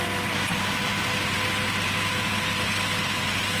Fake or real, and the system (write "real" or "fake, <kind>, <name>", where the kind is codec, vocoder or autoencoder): real